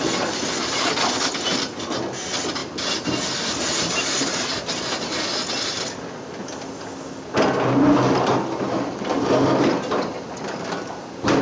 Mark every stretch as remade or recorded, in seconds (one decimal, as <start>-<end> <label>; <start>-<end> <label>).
0.0-11.4 recorded